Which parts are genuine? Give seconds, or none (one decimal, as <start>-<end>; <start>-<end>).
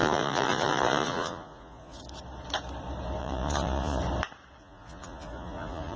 2.0-3.2; 4.0-4.6